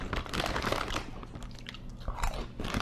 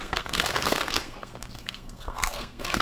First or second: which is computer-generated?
second